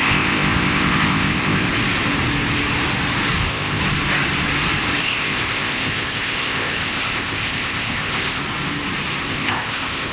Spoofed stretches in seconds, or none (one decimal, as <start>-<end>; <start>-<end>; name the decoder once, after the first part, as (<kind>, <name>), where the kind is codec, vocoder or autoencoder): 0.0-1.7 (codec, ZipCodec); 3.4-3.8; 5.0-8.4; 9.3-10.1